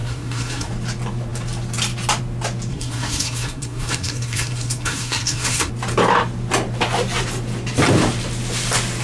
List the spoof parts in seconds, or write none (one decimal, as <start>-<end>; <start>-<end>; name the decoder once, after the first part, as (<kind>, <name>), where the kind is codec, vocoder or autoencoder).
0.0-0.7 (codec, SNAC); 2.7-5.7